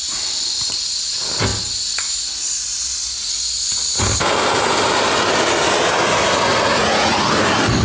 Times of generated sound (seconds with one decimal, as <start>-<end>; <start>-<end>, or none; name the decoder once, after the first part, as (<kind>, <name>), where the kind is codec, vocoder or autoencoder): 6.5-7.3 (vocoder, Vocos)